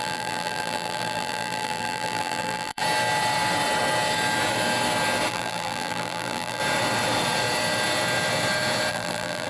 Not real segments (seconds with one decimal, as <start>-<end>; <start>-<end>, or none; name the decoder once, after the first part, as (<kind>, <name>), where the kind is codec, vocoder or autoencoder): 0.0-2.8 (vocoder, BigVGAN v2); 5.3-6.6; 8.9-9.5